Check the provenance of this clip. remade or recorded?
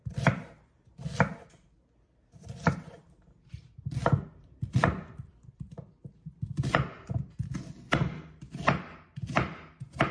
recorded